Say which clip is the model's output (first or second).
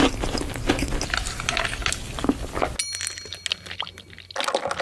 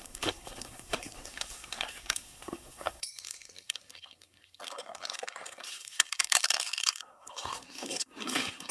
second